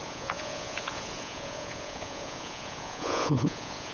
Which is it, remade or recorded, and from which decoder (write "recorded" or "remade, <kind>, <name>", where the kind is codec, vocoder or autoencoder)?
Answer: remade, vocoder, Vocos